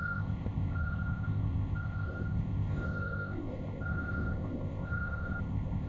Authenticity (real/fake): fake